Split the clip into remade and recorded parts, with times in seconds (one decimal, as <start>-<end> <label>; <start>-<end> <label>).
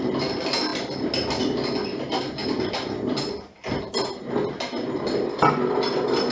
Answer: 0.0-6.3 recorded